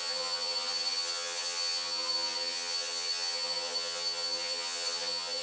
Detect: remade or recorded remade